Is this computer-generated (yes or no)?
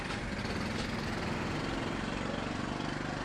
no